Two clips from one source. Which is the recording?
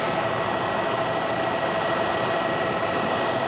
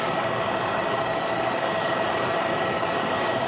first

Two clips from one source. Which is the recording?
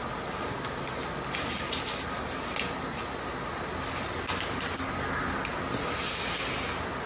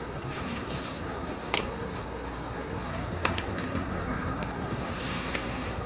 first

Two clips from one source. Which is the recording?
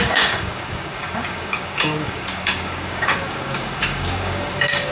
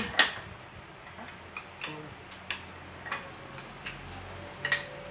second